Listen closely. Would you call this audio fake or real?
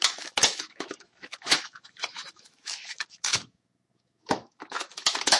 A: fake